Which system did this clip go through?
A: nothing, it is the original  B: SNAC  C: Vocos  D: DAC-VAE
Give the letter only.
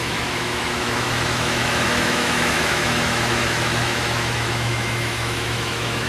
D